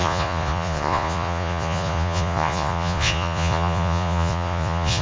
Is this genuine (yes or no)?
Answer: no